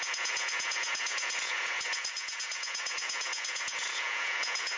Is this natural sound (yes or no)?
no